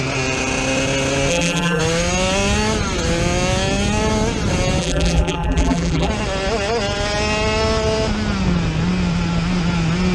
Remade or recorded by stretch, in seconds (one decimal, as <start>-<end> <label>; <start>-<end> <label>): 0.0-1.3 recorded; 1.3-1.8 remade; 1.8-4.8 recorded; 4.8-6.1 remade; 6.1-10.1 recorded